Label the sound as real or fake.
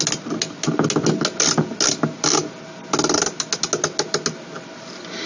real